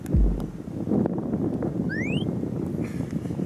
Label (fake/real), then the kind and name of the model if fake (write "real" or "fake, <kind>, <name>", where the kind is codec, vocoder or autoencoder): real